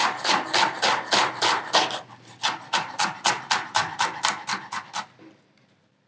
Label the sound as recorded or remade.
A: recorded